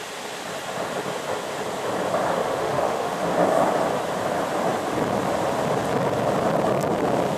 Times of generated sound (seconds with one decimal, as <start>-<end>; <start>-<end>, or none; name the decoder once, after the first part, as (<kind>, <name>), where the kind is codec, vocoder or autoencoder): 2.4-3.2 (autoencoder, DAC-VAE)